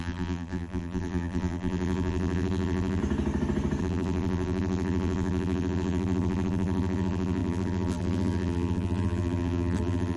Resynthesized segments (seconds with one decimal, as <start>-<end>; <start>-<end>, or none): 0.0-3.0; 3.8-10.2

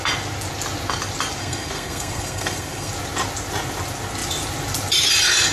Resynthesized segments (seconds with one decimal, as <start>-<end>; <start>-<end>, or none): 1.4-2.9

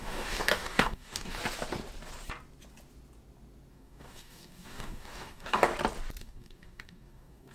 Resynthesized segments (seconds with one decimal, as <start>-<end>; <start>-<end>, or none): 0.0-1.4; 3.7-5.7; 6.2-7.5

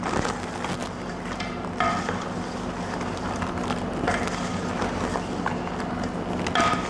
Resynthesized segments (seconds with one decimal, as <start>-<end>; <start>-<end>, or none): none

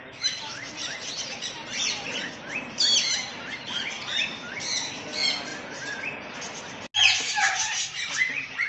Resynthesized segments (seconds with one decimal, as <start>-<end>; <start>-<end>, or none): none

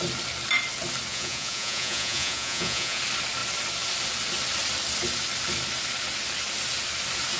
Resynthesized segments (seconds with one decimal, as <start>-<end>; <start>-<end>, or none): 1.1-3.0

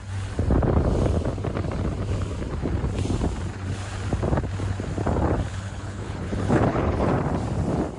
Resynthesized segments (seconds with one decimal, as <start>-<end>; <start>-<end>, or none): 5.5-7.1